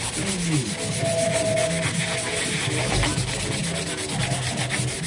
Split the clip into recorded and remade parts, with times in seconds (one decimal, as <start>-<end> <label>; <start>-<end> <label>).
0.0-5.1 recorded